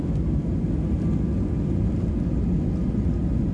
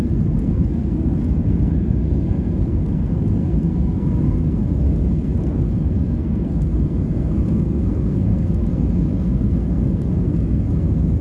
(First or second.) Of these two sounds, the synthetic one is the second